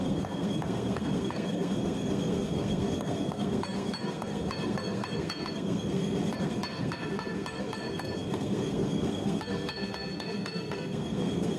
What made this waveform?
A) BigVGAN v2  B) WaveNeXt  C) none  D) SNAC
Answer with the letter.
D